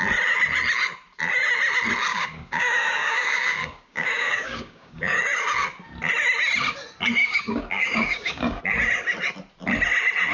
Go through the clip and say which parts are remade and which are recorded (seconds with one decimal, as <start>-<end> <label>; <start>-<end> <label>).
0.0-2.1 recorded; 2.1-5.2 remade; 5.2-7.2 recorded; 7.2-8.6 remade; 8.6-10.3 recorded